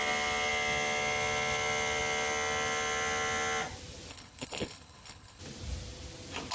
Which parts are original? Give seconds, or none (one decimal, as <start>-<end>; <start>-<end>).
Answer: 0.0-4.1; 5.4-6.5